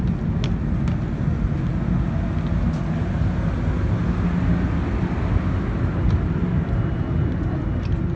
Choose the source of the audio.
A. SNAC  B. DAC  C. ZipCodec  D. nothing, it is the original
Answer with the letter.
D